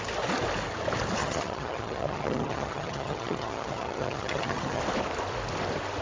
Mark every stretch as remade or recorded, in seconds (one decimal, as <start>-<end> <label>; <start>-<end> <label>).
0.0-1.2 recorded; 1.2-4.8 remade; 4.8-6.0 recorded